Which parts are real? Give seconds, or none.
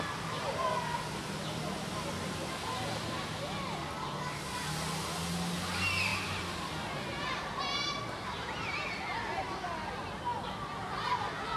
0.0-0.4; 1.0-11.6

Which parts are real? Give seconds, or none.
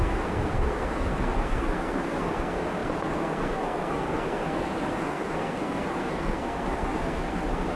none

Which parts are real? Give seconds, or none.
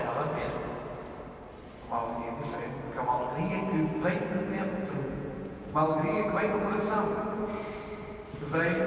0.0-4.7; 7.7-8.9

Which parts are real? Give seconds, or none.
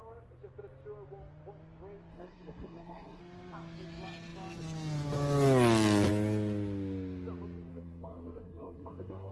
0.0-2.1; 3.2-7.7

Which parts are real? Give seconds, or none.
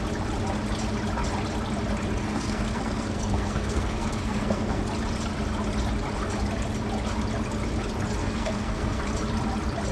0.0-2.2; 4.8-8.2; 9.0-9.9